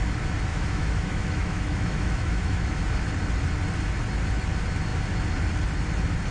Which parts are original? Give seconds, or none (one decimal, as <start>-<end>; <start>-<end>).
0.0-0.5; 2.8-6.3